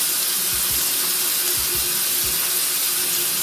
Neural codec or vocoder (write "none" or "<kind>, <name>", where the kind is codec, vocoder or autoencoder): none